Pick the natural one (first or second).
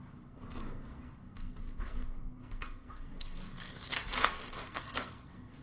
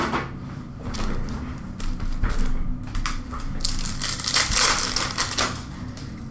second